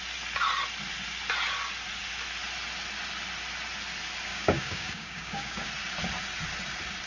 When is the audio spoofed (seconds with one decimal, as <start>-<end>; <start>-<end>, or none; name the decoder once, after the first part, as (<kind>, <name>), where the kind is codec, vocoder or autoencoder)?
4.3-5.7 (codec, DAC)

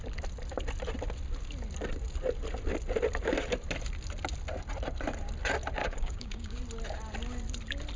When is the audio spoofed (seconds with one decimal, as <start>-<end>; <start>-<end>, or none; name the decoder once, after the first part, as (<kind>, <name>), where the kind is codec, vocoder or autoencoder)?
5.8-6.6 (codec, DAC)

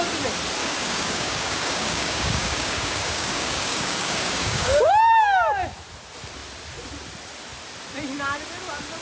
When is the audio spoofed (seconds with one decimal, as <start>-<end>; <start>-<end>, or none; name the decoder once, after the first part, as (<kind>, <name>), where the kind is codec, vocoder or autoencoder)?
0.6-4.9 (codec, DAC)